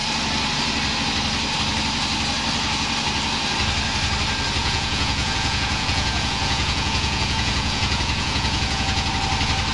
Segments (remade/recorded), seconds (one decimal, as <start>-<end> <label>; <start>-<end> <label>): 0.0-4.6 recorded; 4.6-9.1 remade; 9.1-9.7 recorded